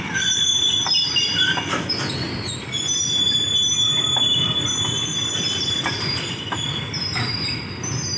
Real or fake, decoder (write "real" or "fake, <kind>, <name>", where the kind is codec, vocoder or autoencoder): fake, vocoder, BigVGAN v2